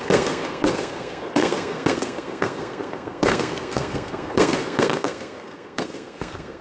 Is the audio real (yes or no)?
no